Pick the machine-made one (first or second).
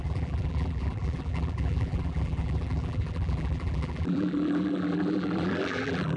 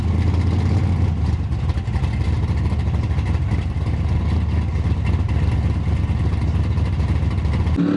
first